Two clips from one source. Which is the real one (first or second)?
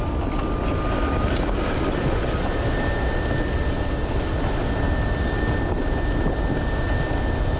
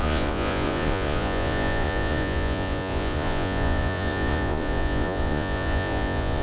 first